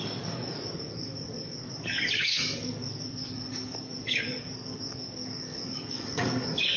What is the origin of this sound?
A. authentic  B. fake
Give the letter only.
B